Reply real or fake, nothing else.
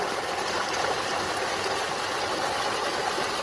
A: real